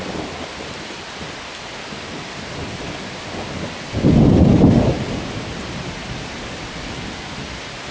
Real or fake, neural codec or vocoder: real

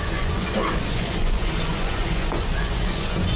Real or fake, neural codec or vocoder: fake, vocoder, Vocos